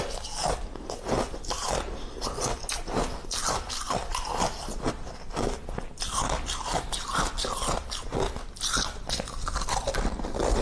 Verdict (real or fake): real